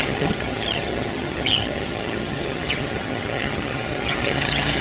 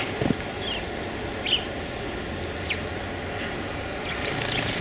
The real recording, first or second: second